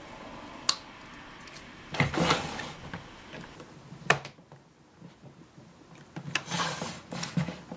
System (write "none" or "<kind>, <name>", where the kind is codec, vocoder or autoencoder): none